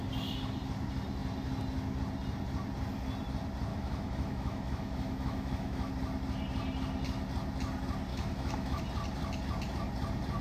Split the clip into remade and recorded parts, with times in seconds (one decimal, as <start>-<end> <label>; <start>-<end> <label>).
0.0-3.7 recorded; 3.7-5.9 remade; 5.9-8.1 recorded; 8.1-8.8 remade; 8.8-10.4 recorded

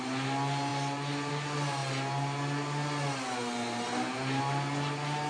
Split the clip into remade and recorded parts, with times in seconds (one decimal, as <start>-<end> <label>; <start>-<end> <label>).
0.0-5.3 recorded